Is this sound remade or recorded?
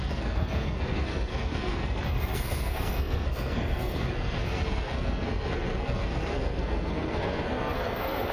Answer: remade